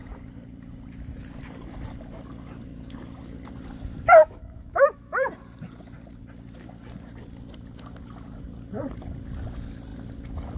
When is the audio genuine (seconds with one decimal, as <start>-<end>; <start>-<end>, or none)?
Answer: 0.0-4.2; 5.3-10.6